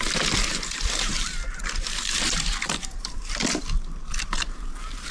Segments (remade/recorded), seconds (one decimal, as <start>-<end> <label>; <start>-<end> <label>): 0.0-0.5 recorded; 0.5-3.3 remade; 3.3-5.1 recorded